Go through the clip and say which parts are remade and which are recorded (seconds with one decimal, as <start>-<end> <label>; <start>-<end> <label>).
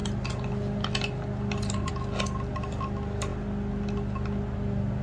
0.0-5.0 recorded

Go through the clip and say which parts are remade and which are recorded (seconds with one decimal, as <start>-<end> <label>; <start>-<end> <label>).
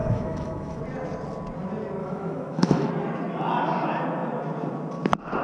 0.0-0.8 remade; 0.8-2.0 recorded; 2.0-2.9 remade; 2.9-5.4 recorded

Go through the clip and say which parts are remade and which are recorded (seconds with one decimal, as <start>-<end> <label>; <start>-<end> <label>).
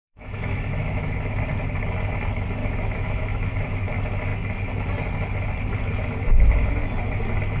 0.0-1.4 remade; 1.4-2.6 recorded; 2.6-3.8 remade; 3.8-7.6 recorded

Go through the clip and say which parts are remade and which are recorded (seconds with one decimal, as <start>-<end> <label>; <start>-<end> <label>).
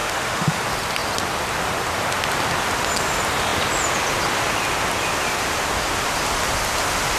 0.0-0.6 remade; 0.6-7.2 recorded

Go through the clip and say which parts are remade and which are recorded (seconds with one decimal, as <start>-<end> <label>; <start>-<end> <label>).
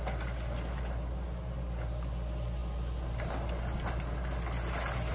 0.0-5.1 recorded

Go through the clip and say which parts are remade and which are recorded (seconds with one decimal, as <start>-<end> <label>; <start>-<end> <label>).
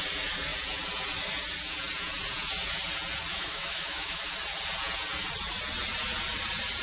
0.0-3.3 recorded; 3.3-4.3 remade; 4.3-6.8 recorded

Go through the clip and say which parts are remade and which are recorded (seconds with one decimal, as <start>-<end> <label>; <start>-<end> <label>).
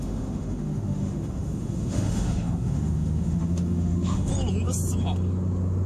0.0-4.3 remade; 4.3-5.9 recorded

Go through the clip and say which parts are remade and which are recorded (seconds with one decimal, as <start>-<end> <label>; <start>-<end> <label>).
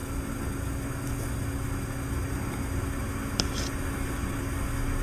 0.0-5.0 recorded